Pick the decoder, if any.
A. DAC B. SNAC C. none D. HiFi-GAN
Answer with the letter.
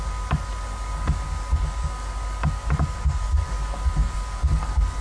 A